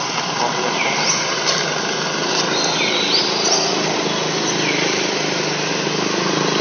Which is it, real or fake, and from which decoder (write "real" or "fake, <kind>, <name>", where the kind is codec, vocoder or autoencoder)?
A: real